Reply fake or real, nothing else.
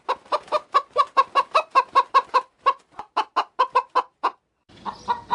real